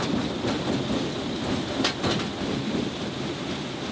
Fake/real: real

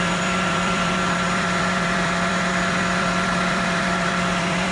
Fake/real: fake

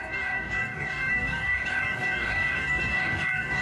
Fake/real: fake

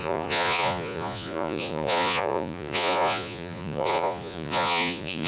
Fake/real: fake